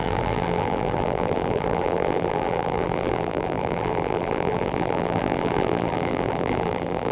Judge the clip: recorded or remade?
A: remade